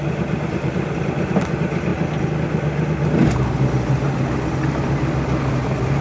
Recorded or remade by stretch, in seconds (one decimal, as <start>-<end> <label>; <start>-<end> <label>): 0.0-6.0 recorded